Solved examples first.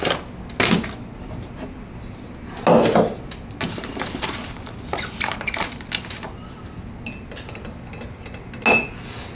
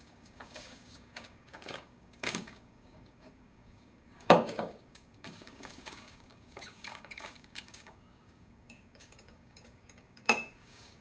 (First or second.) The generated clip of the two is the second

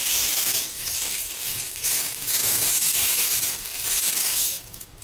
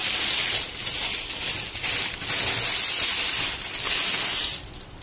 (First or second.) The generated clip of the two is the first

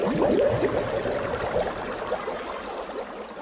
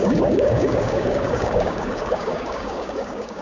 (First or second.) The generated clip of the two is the second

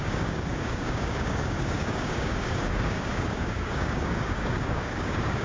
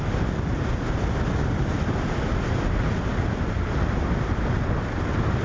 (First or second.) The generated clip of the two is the first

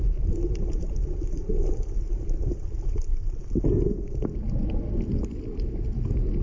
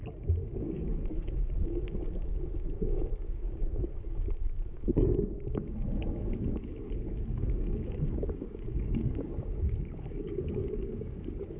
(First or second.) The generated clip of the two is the second